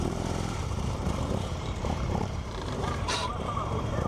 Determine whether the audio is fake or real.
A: fake